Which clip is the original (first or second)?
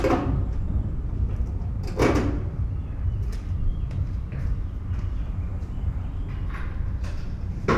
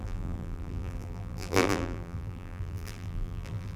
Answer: first